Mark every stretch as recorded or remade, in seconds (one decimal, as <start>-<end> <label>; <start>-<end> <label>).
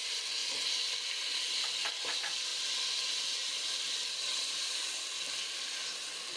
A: 0.0-6.4 recorded